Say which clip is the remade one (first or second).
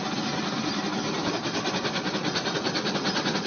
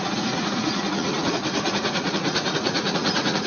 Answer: second